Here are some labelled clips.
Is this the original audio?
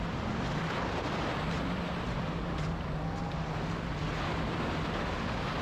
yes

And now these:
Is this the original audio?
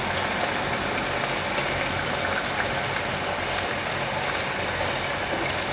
yes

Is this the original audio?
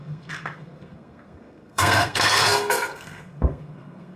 no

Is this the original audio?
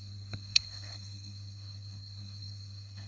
no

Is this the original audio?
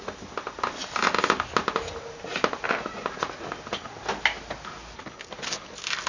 yes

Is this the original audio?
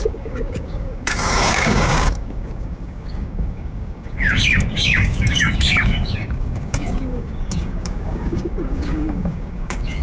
no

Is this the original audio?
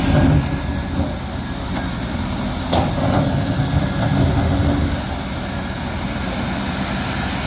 yes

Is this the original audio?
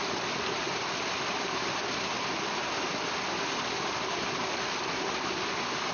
yes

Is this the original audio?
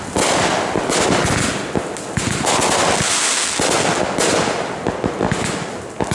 yes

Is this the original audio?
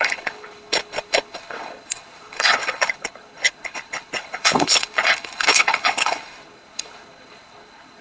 no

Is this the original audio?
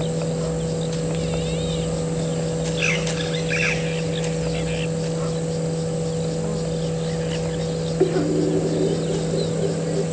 yes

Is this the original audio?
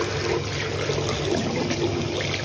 yes